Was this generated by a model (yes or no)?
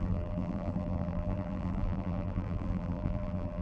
yes